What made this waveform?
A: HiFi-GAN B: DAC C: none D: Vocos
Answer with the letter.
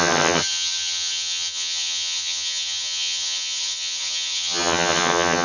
A